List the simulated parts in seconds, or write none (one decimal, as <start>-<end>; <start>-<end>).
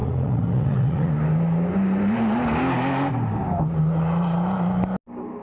0.0-1.1